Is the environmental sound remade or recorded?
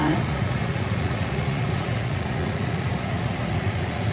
remade